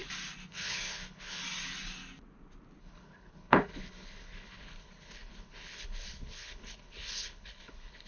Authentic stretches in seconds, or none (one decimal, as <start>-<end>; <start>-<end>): 0.0-0.5; 1.4-2.8